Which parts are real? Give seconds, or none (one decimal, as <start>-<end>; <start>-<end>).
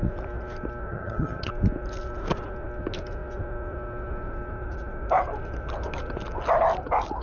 0.0-0.9; 1.5-7.2